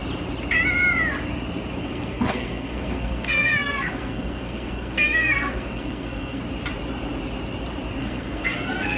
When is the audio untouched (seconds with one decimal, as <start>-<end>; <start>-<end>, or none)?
0.0-1.8; 6.4-8.0